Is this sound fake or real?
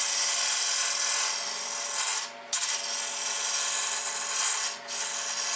real